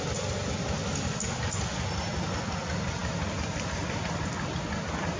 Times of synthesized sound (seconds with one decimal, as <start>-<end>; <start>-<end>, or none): none